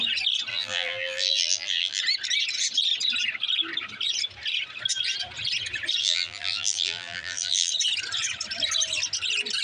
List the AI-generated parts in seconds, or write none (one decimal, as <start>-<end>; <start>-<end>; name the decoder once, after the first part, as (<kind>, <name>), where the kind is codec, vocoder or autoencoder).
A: 0.5-2.0 (vocoder, BigVGAN v2); 6.0-7.7